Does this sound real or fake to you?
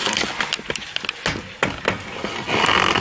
real